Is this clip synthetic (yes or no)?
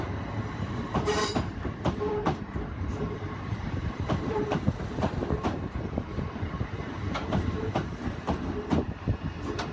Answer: yes